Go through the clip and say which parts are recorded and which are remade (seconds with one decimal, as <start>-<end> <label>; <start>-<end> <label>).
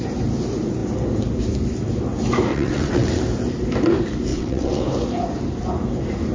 0.0-2.5 recorded; 2.5-3.2 remade; 3.2-4.3 recorded; 4.3-4.8 remade; 4.8-6.3 recorded